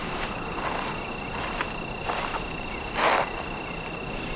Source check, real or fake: real